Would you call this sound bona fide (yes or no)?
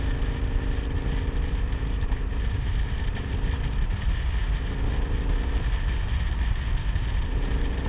yes